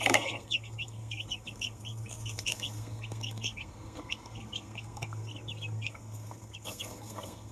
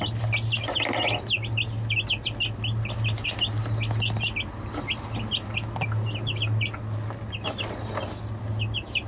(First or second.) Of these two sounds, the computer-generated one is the first